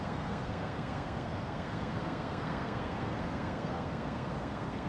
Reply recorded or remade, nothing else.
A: remade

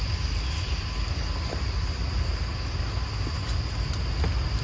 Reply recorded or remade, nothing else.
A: recorded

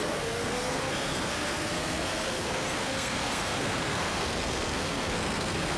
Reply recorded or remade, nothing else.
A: remade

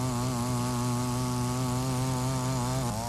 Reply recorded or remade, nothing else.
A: recorded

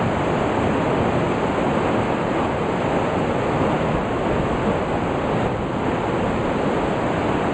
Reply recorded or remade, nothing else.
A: recorded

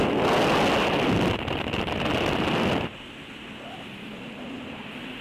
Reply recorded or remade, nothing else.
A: recorded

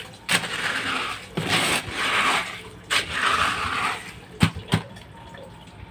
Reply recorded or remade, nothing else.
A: recorded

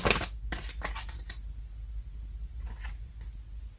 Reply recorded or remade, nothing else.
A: recorded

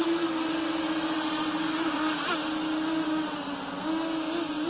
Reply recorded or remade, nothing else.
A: recorded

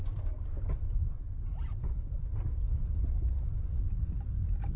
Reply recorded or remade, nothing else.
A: recorded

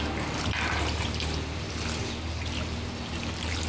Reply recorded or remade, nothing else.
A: remade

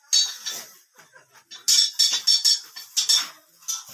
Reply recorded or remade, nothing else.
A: recorded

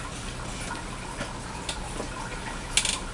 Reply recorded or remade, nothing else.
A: recorded